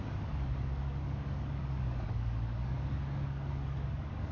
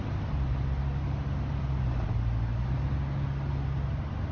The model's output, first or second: first